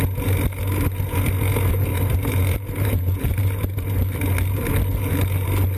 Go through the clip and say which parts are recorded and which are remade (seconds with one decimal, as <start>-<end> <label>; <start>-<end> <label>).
0.0-1.9 recorded; 1.9-4.0 remade; 4.0-5.8 recorded